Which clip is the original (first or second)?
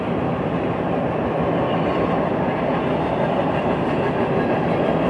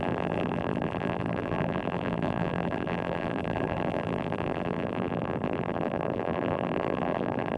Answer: first